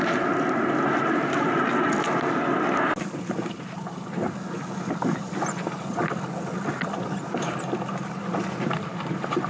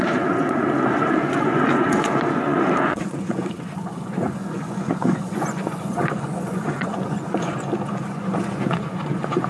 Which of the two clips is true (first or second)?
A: first